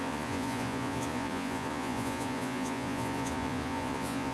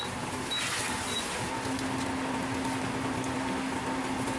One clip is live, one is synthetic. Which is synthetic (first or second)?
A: first